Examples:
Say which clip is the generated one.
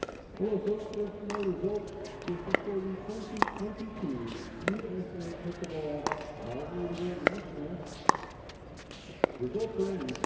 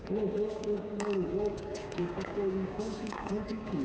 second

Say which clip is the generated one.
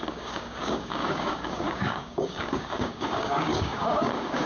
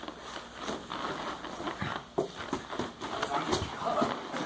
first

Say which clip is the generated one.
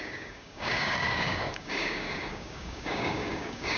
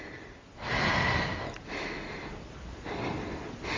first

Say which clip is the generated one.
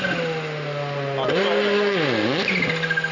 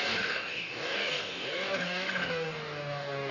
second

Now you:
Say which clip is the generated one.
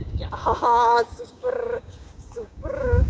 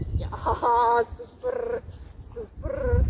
first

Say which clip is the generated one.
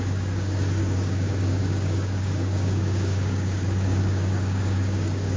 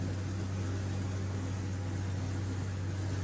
first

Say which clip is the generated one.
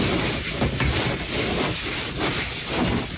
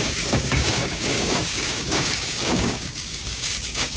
second